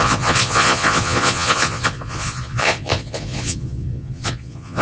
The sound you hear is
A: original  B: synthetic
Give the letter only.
B